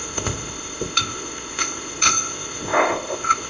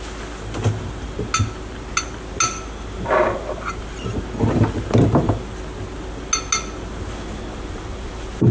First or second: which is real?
second